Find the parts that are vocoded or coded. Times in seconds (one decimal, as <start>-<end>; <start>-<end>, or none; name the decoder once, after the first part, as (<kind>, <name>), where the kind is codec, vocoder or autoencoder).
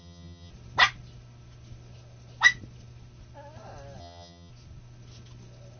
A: 0.0-0.5 (vocoder, HiFi-GAN); 4.0-4.5